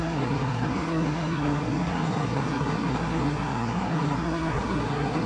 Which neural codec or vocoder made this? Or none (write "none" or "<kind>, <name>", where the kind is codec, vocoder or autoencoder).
codec, SNAC